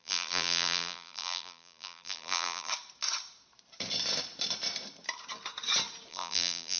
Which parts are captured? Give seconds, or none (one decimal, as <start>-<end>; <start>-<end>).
2.7-6.1